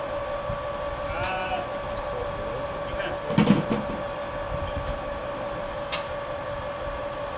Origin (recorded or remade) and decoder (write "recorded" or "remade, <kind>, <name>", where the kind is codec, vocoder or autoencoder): recorded